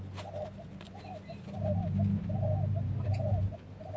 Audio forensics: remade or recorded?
recorded